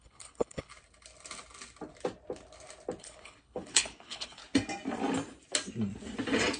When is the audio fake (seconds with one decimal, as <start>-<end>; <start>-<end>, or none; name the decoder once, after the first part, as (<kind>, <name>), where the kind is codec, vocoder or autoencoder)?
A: 0.0-0.7 (codec, HILCodec); 3.0-4.4